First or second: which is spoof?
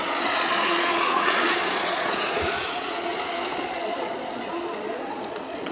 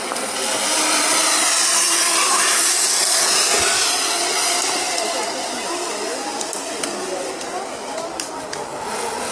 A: first